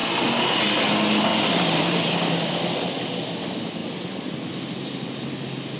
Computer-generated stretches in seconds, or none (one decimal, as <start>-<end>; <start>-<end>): 1.3-2.8